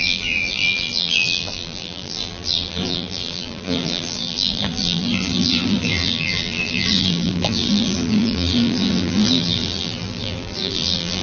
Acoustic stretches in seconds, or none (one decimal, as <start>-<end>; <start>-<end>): none